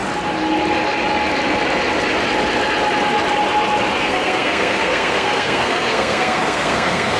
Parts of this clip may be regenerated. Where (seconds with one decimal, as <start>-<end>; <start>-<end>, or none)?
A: 4.0-7.2